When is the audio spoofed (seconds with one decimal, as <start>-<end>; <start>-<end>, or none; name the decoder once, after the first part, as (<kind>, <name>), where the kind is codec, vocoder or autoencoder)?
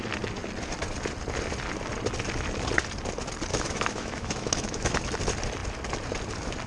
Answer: 3.5-5.0 (autoencoder, DAC-VAE)